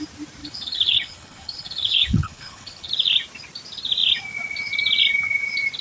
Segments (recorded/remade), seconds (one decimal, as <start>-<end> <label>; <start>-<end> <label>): 0.0-0.4 recorded; 0.4-2.9 remade; 2.9-5.8 recorded